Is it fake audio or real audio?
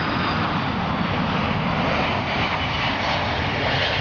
real